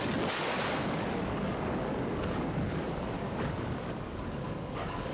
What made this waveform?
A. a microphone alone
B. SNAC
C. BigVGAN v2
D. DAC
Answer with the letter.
D